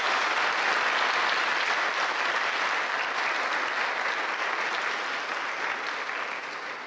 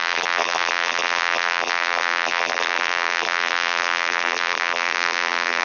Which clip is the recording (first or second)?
first